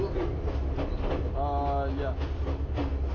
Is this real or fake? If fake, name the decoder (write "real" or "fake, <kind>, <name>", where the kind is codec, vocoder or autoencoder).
real